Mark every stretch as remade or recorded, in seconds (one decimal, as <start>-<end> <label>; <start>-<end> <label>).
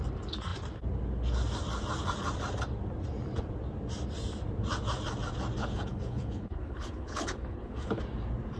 0.0-5.6 recorded; 5.6-8.0 remade; 8.0-8.6 recorded